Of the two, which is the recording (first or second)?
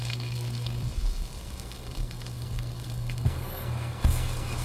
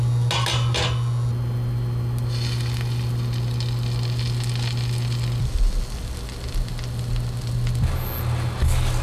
second